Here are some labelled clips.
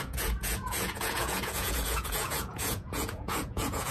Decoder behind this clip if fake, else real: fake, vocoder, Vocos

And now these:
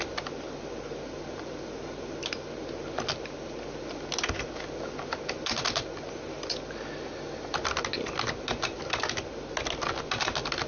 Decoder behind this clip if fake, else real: real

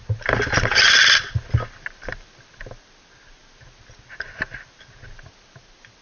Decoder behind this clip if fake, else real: real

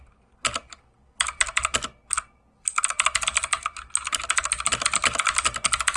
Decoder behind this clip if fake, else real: real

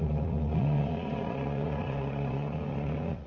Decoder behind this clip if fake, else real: fake, vocoder, Vocos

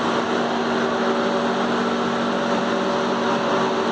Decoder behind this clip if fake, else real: real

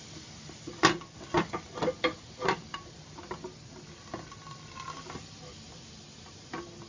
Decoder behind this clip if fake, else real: real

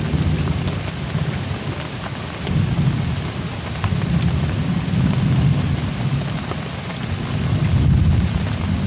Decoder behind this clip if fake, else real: real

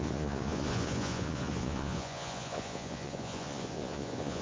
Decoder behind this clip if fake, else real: fake, vocoder, Vocos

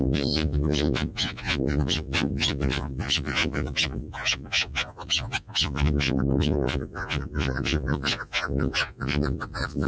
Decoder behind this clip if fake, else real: fake, vocoder, Vocos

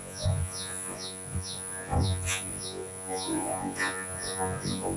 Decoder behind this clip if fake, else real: fake, vocoder, Vocos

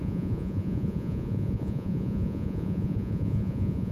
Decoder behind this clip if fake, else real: fake, vocoder, Vocos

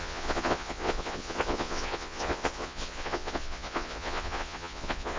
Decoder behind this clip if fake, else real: fake, vocoder, Vocos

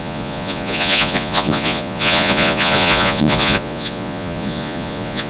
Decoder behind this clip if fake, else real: fake, vocoder, Vocos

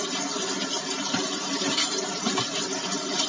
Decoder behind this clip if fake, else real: real